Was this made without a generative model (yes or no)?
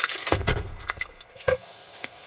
no